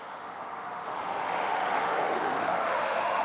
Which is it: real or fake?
fake